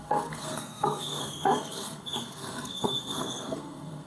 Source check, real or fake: fake